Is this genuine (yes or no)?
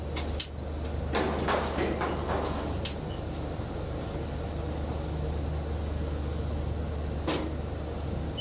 yes